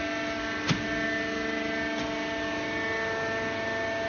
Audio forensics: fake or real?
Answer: real